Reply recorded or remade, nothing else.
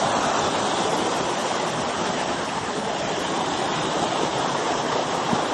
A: remade